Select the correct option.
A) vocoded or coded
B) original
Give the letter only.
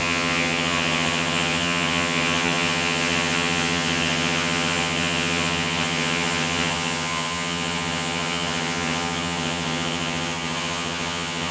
A